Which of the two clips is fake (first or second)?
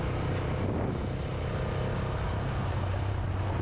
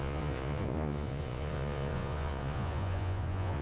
second